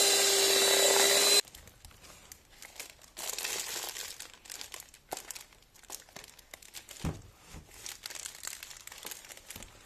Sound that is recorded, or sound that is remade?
recorded